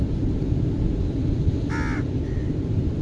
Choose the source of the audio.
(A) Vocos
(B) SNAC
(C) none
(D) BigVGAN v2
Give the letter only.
C